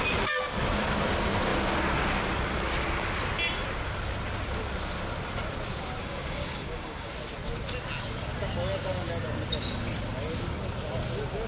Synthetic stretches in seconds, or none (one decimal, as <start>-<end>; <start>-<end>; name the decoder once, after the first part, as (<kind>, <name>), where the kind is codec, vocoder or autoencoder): 6.0-7.1 (codec, DAC)